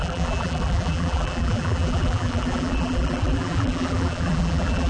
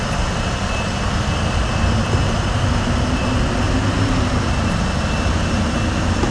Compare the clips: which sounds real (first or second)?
second